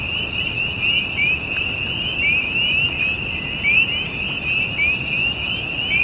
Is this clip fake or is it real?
real